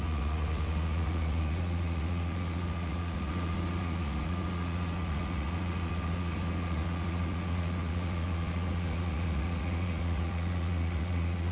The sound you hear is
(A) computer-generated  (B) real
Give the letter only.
A